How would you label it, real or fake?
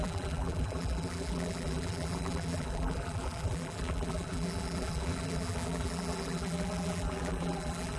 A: fake